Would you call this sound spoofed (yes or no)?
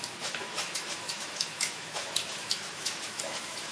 yes